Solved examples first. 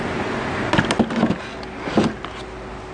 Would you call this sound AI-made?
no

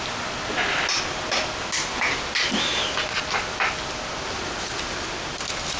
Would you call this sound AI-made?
no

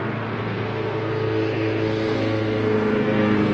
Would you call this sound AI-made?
yes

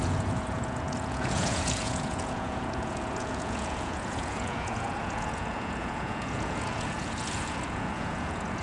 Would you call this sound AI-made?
yes